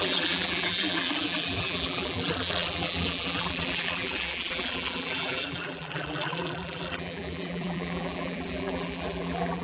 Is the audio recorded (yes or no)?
no